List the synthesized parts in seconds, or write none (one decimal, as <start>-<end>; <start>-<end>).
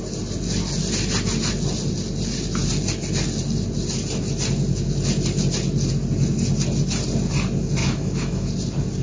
7.8-8.5